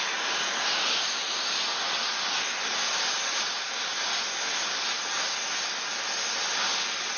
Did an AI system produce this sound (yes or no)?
no